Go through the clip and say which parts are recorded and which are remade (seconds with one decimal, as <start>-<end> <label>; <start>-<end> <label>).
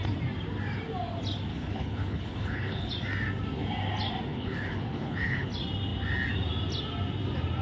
0.0-1.5 recorded; 1.5-2.9 remade; 2.9-4.3 recorded; 4.3-5.5 remade; 5.5-7.6 recorded